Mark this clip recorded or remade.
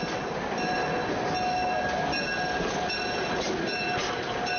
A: recorded